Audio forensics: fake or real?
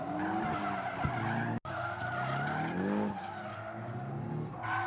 real